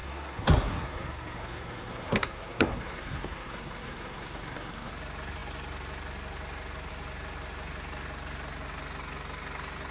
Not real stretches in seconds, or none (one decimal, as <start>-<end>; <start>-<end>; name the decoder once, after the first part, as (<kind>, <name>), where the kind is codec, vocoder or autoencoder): 0.0-4.9 (codec, SNAC)